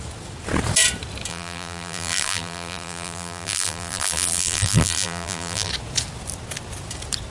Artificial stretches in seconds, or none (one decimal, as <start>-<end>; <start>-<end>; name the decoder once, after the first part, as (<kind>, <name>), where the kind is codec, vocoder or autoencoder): 1.3-5.7 (vocoder, BigVGAN v2)